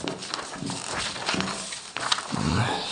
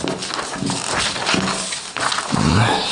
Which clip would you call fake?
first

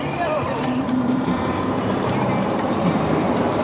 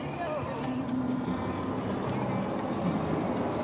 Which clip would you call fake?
first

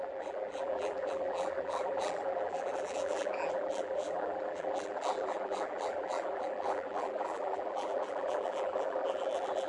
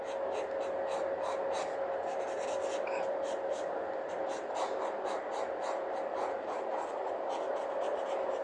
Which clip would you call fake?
first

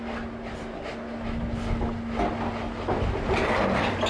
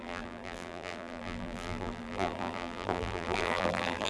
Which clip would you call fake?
second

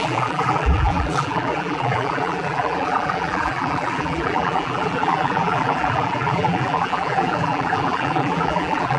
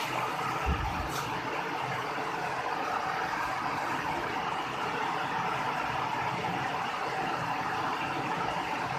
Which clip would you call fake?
first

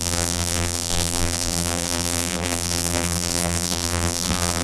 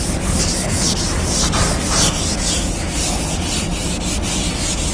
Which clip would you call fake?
first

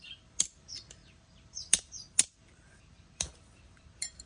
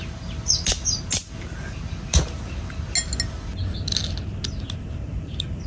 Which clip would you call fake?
first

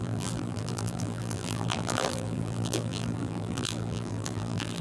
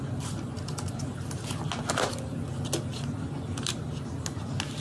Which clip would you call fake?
first